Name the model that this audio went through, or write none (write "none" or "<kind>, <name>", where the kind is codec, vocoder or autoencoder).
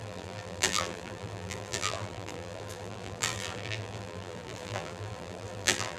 vocoder, BigVGAN v2